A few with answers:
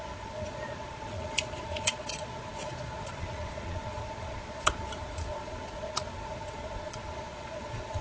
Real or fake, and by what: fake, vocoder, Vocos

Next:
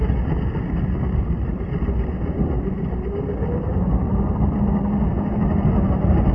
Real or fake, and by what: real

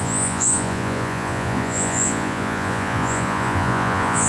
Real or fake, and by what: fake, vocoder, Vocos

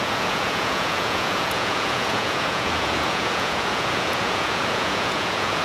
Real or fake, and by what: fake, vocoder, Vocos